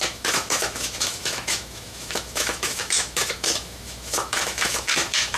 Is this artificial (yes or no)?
yes